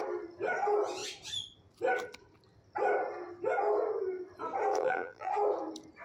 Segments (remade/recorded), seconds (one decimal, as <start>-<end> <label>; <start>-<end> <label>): 0.0-4.7 recorded; 4.7-5.3 remade; 5.3-6.0 recorded

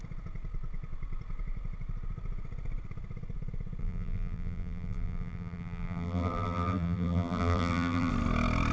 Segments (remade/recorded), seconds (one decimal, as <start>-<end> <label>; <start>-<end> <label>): 0.0-3.8 recorded; 3.8-8.1 remade; 8.1-8.7 recorded

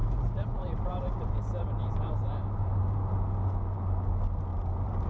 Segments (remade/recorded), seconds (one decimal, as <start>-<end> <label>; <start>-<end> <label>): 0.0-3.1 remade; 3.1-4.5 recorded; 4.5-5.1 remade

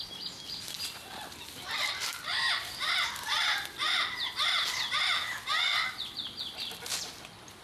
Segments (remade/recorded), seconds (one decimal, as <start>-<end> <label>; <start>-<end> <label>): 0.0-7.6 recorded

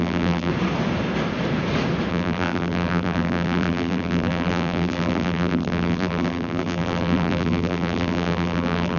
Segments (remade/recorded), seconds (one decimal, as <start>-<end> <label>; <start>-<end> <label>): 0.0-0.5 remade; 0.5-2.1 recorded; 2.1-9.0 remade